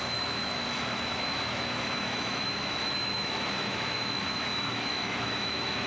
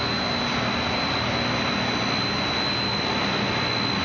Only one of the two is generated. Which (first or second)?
first